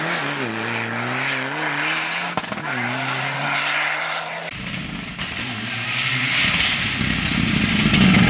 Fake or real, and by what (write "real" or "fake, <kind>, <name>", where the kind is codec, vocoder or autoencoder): real